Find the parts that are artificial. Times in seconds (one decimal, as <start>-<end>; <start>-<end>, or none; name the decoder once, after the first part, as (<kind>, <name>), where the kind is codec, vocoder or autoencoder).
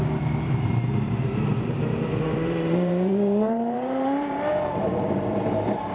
0.0-5.9 (vocoder, BigVGAN v2)